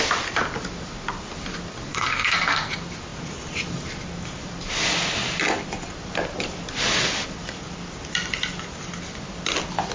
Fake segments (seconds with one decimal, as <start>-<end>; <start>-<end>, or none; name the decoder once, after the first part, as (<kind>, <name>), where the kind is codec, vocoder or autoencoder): 1.9-2.7 (codec, SNAC)